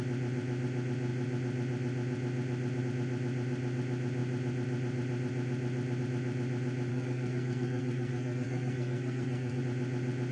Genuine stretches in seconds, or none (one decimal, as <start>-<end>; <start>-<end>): 0.0-6.9; 9.6-10.3